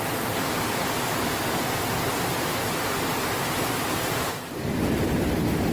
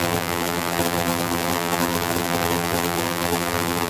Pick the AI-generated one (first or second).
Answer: second